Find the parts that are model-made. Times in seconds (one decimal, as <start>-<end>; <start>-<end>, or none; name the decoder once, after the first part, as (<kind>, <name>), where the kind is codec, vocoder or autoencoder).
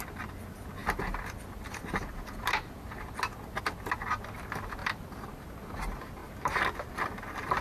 0.8-3.3 (vocoder, BigVGAN v2); 4.8-5.4